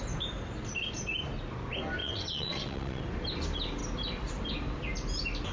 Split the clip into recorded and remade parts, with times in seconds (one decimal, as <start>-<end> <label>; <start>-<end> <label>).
0.0-2.0 recorded; 2.0-3.0 remade; 3.0-5.5 recorded